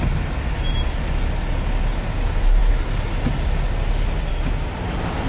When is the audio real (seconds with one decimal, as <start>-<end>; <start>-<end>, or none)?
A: 0.0-5.3